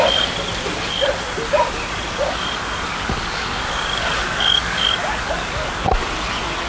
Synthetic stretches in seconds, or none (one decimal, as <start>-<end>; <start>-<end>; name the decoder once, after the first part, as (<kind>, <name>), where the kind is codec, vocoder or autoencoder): 2.9-5.7 (codec, DAC)